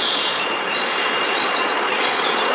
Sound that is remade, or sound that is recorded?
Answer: remade